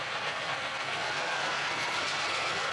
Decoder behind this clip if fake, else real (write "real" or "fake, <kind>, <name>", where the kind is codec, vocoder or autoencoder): fake, codec, SNAC